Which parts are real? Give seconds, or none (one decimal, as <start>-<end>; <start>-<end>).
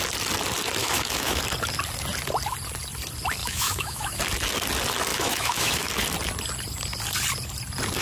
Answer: 0.0-0.8; 1.4-3.4; 4.2-5.1; 5.9-8.0